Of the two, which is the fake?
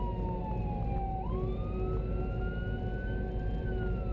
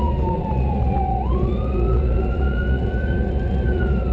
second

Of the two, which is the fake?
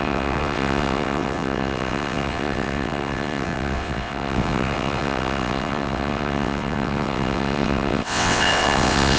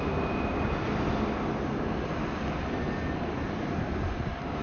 first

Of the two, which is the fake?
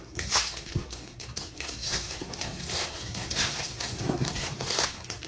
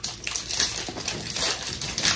first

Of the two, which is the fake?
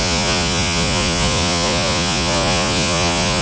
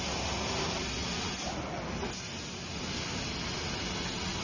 first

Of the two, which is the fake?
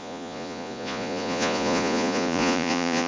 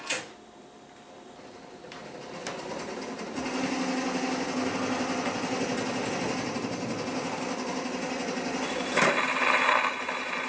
first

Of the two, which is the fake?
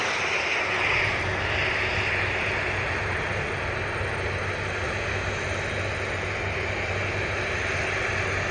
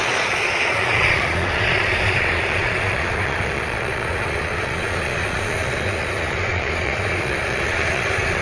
second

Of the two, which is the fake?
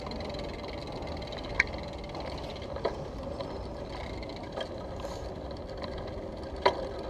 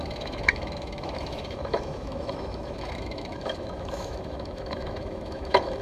second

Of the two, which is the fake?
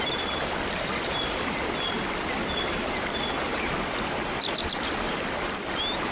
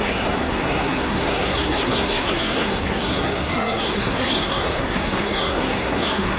second